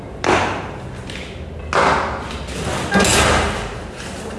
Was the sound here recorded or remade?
recorded